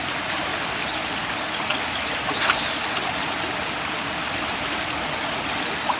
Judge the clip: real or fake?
real